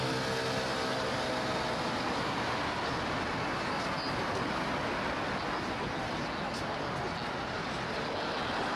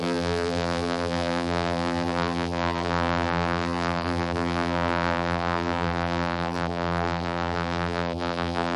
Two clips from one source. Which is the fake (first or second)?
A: second